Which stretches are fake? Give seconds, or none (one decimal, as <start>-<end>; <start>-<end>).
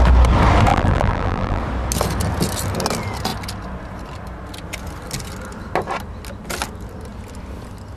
0.7-1.6